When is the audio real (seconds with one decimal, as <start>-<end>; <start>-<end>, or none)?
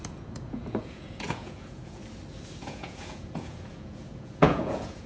2.0-2.6